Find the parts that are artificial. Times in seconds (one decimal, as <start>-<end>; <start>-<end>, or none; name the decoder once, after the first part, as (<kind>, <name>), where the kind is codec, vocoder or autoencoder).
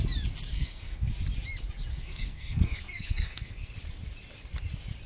0.5-1.1 (codec, SNAC); 1.9-3.7